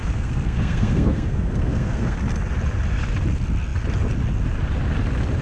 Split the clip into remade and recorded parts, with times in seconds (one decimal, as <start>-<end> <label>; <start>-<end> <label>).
0.0-2.2 remade; 2.2-5.4 recorded